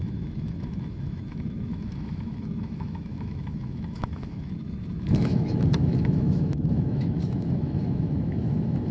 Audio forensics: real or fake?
fake